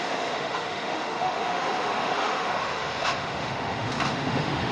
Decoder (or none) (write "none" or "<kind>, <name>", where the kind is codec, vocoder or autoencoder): autoencoder, DAC-VAE